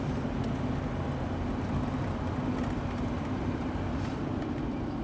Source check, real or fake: real